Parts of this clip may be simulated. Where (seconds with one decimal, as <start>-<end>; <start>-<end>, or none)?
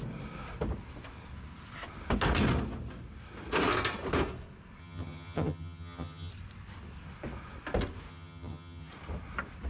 4.8-6.3; 8.1-8.9